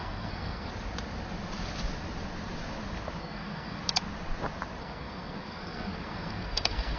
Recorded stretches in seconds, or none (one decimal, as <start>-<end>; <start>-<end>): 0.7-3.2; 3.8-4.8